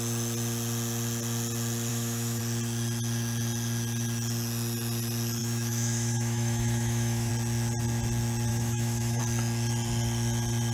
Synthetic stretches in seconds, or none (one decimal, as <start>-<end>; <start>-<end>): 1.9-2.4; 5.4-7.3; 8.5-9.2